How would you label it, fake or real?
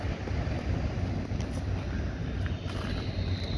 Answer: real